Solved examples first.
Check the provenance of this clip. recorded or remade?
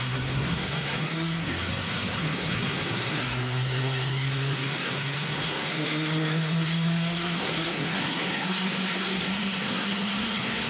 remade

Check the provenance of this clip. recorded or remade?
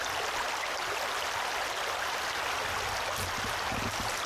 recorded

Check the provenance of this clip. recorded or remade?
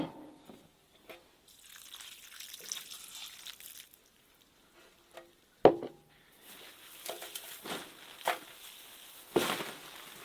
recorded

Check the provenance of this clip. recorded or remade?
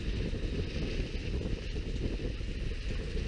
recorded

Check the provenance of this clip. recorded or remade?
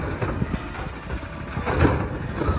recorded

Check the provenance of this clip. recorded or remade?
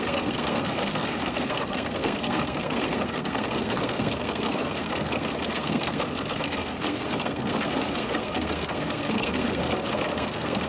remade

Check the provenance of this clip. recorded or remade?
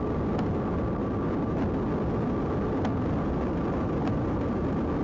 recorded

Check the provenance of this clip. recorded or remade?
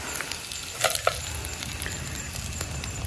recorded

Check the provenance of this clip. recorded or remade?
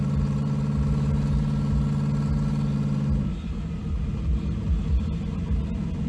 recorded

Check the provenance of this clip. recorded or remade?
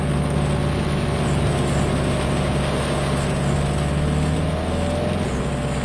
recorded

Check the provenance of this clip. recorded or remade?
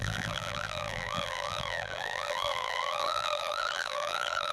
remade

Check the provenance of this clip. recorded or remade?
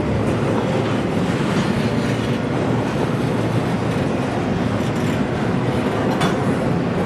recorded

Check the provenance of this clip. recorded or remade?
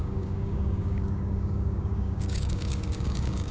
remade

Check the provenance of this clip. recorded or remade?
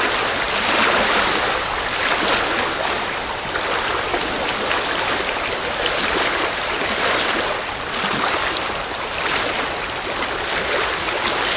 recorded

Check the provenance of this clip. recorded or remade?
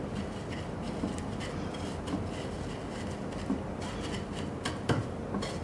recorded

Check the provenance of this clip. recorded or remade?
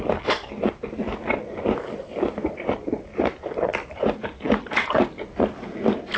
recorded